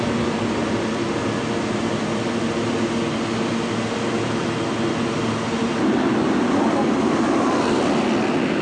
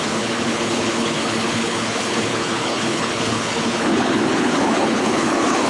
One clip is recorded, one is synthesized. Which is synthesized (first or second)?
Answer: second